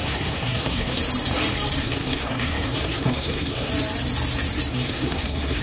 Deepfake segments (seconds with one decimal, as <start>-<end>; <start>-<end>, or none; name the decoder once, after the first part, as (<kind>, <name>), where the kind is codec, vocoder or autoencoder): 0.0-1.0 (codec, SNAC); 1.8-3.7; 4.7-5.6